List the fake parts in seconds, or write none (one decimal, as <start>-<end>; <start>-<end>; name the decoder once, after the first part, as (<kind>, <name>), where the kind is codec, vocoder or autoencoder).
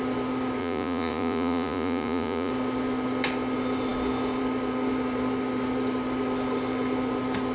0.6-2.5 (vocoder, Vocos)